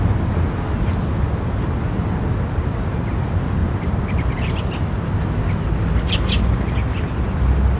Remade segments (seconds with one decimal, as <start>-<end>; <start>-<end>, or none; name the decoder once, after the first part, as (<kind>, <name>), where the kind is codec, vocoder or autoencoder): none

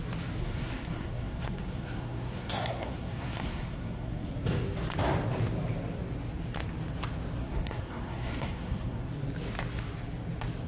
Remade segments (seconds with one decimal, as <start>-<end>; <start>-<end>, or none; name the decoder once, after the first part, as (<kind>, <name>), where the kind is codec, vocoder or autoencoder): 0.4-4.3 (codec, SNAC); 7.4-9.1